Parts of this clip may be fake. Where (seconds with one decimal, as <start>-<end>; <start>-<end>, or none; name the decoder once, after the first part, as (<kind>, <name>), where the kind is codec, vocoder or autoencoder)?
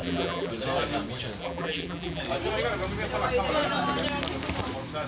0.0-0.5 (vocoder, BigVGAN v2); 1.4-2.2